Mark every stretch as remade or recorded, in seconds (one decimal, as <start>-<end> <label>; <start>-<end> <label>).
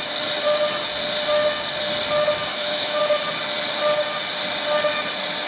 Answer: 0.0-2.5 recorded; 2.5-3.0 remade; 3.0-5.5 recorded